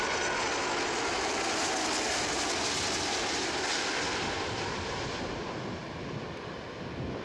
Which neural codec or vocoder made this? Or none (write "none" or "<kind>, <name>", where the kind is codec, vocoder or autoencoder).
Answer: none